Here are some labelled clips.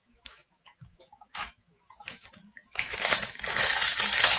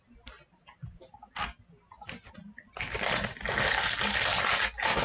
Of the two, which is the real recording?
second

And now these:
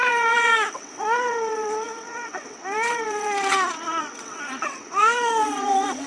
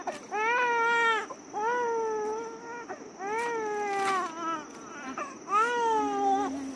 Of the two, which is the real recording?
second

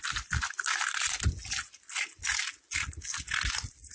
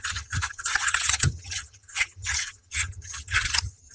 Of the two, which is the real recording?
first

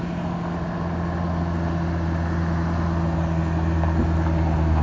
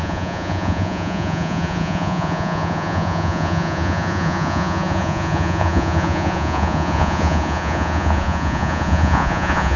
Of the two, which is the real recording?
first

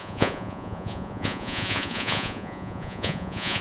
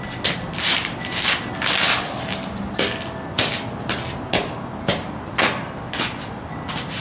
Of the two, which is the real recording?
second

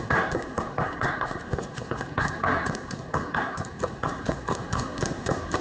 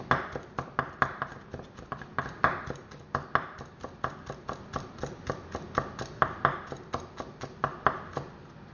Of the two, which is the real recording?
second